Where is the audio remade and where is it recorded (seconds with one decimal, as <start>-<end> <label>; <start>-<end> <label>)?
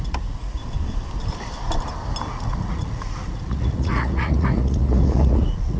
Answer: 0.0-0.6 remade; 0.6-2.3 recorded; 2.3-5.8 remade